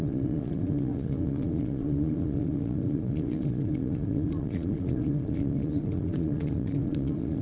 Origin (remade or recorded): remade